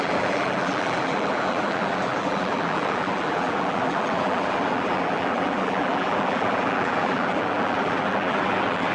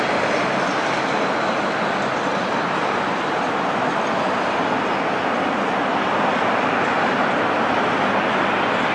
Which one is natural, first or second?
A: second